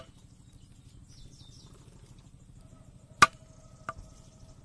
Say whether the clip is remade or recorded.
recorded